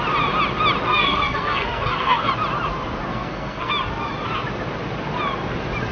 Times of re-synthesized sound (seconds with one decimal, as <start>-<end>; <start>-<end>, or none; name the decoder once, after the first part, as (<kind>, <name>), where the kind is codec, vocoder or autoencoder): 0.9-2.3 (codec, SNAC); 3.1-3.7